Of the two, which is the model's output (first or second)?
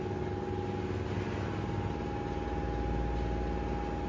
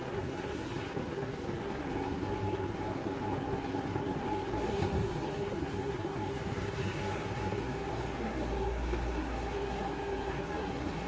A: second